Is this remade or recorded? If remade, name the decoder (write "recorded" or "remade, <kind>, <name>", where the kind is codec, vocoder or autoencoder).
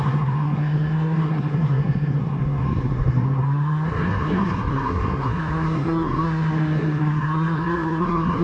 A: remade, codec, SNAC